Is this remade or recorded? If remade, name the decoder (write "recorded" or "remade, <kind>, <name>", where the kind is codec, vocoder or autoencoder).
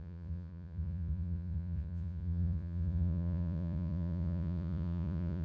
remade, vocoder, Vocos